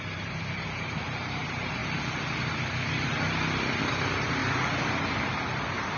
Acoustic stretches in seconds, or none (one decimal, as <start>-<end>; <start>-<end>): 1.8-3.9; 4.4-5.0